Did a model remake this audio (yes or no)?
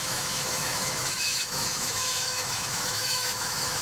yes